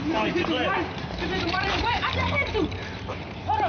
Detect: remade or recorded remade